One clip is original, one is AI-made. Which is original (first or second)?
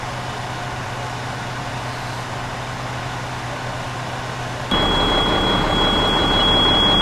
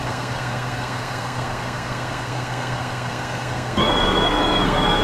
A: first